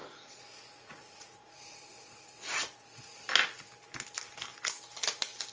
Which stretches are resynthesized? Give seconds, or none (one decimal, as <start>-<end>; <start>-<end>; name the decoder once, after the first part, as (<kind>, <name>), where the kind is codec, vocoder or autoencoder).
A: 0.0-3.3 (vocoder, Vocos)